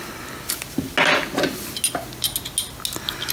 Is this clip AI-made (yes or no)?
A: no